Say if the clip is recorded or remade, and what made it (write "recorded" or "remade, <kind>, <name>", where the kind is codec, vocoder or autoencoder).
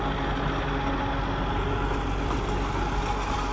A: recorded